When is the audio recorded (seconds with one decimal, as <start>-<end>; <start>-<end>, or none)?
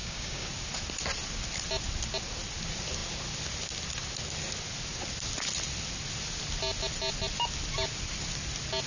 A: 0.5-8.9